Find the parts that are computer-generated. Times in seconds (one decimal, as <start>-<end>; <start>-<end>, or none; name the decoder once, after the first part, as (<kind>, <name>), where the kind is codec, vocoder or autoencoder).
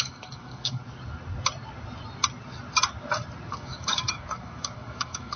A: 0.0-0.8 (codec, DAC); 3.5-5.4